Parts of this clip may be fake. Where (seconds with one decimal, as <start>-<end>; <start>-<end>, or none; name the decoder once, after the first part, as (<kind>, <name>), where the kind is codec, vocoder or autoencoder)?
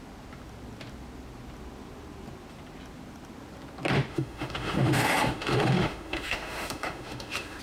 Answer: 4.1-7.6 (autoencoder, DAC-VAE)